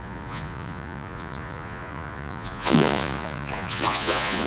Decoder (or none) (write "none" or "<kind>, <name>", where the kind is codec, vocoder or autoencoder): vocoder, Vocos